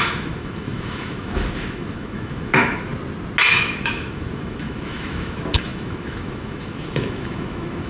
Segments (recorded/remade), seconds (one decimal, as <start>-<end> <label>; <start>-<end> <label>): 0.0-2.9 remade; 2.9-3.5 recorded; 3.5-7.9 remade